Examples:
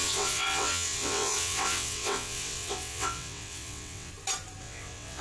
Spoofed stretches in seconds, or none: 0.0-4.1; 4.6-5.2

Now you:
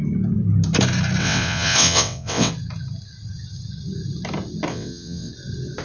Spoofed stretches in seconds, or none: 1.2-2.5; 4.7-5.3